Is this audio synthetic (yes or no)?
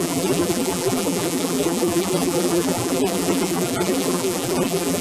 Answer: yes